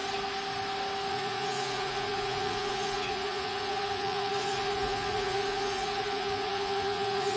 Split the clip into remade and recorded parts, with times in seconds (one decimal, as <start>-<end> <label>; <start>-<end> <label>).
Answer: 0.0-1.1 recorded; 1.1-7.4 remade